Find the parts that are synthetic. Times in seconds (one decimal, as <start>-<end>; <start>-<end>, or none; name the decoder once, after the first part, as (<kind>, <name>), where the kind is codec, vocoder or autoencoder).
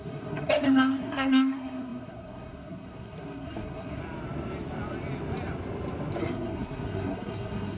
0.0-4.0 (codec, SNAC); 6.2-7.8